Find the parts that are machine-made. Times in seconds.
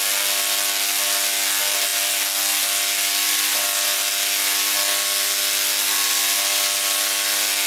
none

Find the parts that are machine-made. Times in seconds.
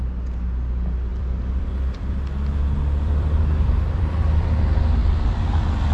1.1-4.6 (vocoder, BigVGAN v2)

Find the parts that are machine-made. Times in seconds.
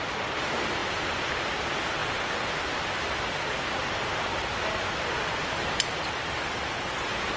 0.8-1.4 (vocoder, BigVGAN v2)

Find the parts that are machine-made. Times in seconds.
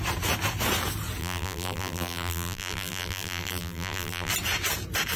1.2-4.3 (vocoder, BigVGAN v2)